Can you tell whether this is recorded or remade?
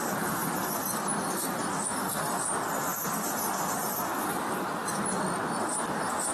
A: recorded